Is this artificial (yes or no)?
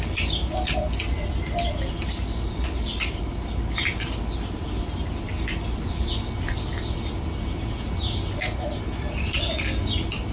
no